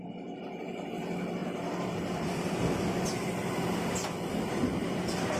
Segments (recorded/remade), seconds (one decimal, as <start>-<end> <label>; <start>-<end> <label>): 0.0-5.4 recorded